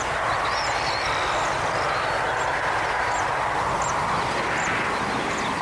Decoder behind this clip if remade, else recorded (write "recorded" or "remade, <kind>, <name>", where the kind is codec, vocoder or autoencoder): recorded